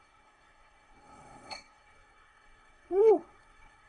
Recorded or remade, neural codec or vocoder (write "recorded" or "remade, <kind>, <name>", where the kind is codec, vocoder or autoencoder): remade, codec, SNAC